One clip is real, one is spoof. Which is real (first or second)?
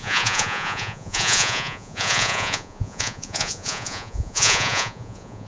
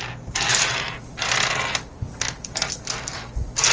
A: second